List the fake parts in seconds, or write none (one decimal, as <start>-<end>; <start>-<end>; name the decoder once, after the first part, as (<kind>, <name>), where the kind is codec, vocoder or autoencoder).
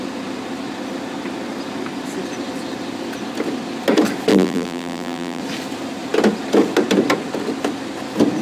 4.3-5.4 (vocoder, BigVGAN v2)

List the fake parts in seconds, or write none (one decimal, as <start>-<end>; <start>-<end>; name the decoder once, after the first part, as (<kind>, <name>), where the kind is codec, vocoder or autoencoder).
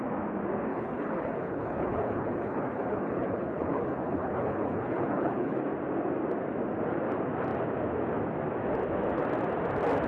0.7-5.6 (codec, HILCodec)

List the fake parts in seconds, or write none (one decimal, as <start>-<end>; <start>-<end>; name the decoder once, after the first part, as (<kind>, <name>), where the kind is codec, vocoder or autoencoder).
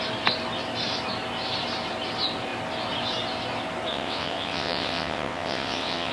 3.9-6.1 (vocoder, WaveNeXt)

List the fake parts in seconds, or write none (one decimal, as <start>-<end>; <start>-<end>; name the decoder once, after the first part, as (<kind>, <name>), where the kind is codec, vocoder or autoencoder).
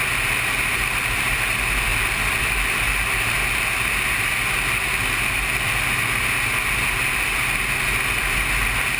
1.9-2.4 (vocoder, BigVGAN v2)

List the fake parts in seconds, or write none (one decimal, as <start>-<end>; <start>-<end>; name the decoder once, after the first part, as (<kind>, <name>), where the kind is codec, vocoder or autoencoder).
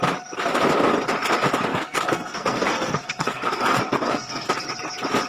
1.7-4.5 (codec, SNAC)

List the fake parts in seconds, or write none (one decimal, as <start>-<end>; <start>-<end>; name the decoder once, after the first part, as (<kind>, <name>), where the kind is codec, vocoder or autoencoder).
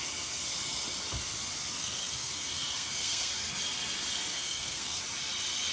1.8-3.3 (codec, SNAC); 4.3-5.0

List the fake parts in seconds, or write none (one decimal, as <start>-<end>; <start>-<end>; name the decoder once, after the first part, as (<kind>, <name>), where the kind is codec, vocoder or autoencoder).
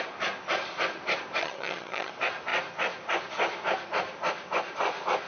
1.4-2.1 (vocoder, HiFi-GAN)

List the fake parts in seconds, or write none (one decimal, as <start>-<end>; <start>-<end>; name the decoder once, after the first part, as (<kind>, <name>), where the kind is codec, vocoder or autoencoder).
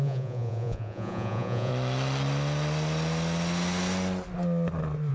0.0-1.7 (vocoder, Vocos)